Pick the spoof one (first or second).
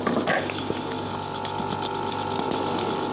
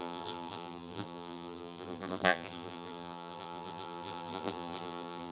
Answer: second